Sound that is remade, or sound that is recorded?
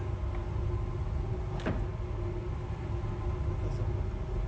recorded